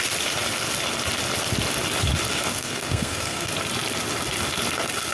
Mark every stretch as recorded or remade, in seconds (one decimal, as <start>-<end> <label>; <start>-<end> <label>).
0.0-2.3 recorded; 2.3-3.5 remade; 3.5-5.1 recorded